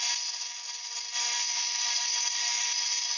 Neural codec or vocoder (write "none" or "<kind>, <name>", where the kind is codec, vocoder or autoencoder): none